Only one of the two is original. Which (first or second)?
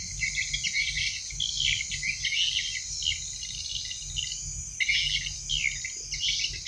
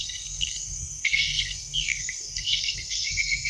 first